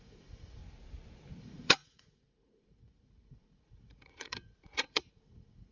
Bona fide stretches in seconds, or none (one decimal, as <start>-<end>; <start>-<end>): 0.6-1.4